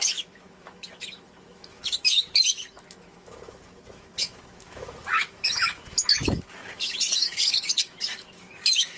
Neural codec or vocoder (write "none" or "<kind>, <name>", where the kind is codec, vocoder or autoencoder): autoencoder, DAC-VAE